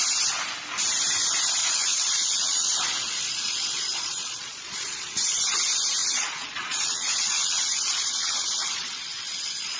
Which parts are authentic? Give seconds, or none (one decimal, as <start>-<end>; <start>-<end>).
0.0-1.6; 5.4-6.0